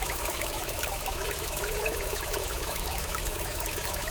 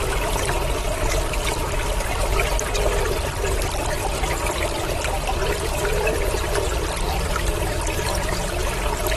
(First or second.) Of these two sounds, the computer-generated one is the first